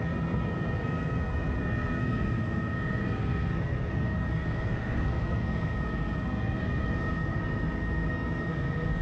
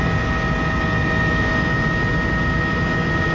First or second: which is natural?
second